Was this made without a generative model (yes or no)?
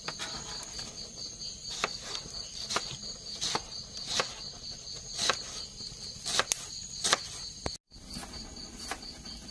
yes